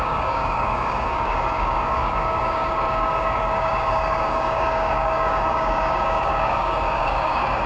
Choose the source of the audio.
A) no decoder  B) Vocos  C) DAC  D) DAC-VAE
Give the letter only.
C